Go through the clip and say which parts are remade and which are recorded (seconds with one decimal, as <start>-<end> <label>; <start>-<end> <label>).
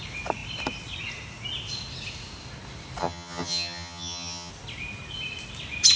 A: 0.0-3.0 recorded; 3.0-4.5 remade; 4.5-6.0 recorded